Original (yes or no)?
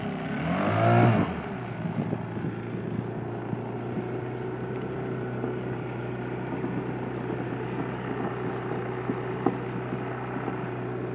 yes